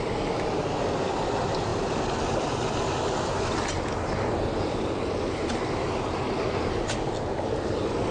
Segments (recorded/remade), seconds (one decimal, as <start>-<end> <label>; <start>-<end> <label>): 0.0-8.1 recorded